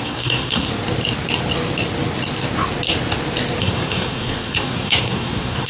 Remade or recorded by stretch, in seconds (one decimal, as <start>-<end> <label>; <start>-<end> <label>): 0.0-0.7 remade; 0.7-3.6 recorded; 3.6-5.7 remade